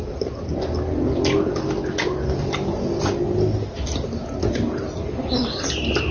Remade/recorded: recorded